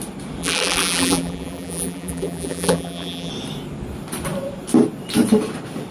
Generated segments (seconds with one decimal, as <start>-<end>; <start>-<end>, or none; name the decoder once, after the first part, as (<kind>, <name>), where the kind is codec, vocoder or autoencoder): 0.4-3.3 (vocoder, BigVGAN v2)